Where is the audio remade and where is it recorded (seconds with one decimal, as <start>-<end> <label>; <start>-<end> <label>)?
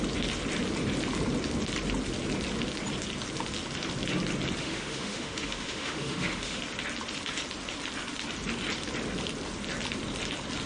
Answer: 0.0-4.6 recorded; 4.6-6.6 remade; 6.6-10.7 recorded